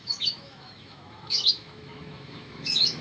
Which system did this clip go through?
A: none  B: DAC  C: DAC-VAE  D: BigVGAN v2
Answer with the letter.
C